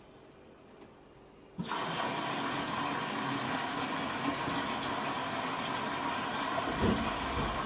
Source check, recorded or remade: recorded